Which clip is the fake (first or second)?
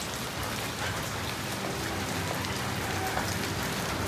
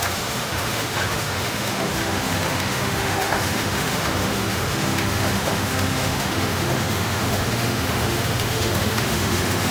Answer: second